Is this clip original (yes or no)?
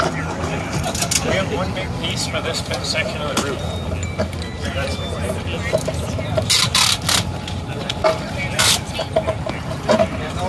yes